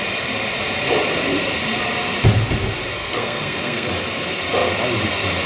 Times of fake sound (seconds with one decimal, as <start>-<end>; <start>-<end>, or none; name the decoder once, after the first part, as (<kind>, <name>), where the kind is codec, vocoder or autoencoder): 3.0-3.9 (codec, SNAC)